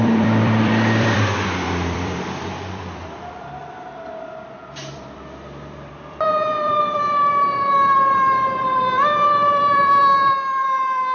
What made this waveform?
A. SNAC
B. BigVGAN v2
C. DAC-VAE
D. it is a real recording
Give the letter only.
B